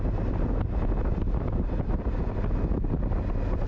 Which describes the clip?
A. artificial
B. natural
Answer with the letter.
B